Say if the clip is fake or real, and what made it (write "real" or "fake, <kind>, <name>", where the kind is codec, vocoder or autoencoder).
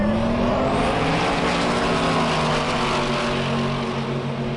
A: real